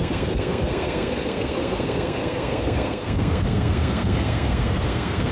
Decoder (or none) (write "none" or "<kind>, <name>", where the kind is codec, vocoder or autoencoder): codec, SNAC